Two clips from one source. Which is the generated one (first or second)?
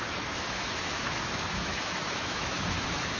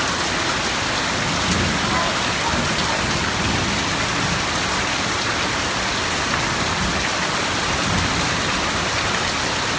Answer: first